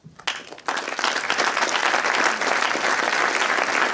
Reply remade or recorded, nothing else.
recorded